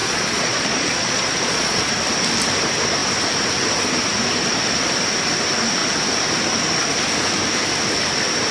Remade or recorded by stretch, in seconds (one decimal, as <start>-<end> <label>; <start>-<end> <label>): 0.0-1.9 remade; 1.9-8.5 recorded